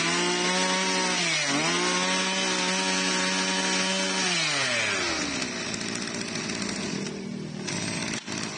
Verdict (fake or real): real